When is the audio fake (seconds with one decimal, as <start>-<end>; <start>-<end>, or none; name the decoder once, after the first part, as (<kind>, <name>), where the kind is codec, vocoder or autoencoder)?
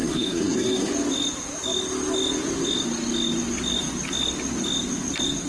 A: 0.0-0.9 (codec, SNAC)